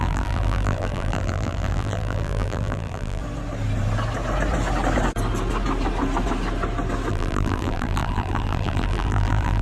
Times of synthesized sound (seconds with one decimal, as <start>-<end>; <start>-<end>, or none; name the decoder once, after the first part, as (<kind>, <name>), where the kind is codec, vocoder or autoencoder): 0.0-3.2 (vocoder, BigVGAN v2); 7.1-9.6